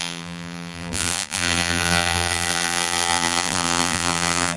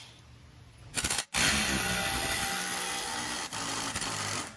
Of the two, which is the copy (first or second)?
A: first